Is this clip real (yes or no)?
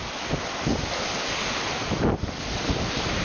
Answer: yes